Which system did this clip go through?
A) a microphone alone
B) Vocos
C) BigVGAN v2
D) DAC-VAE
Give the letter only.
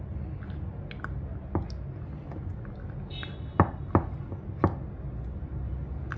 A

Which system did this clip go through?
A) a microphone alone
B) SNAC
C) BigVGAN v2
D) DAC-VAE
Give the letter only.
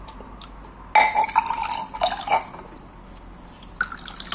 A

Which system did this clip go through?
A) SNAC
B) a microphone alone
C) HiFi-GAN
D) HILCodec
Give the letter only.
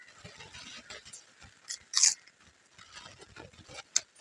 B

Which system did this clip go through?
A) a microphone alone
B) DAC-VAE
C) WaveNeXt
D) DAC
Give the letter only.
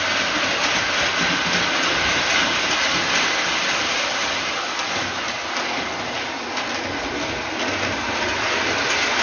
A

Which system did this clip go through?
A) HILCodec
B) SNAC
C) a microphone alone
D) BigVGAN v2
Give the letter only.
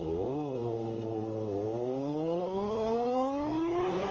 B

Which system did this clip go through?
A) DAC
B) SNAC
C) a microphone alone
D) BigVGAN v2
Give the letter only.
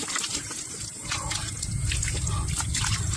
C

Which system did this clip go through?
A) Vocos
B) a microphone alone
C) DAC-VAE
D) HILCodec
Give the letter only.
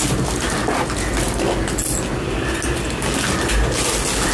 B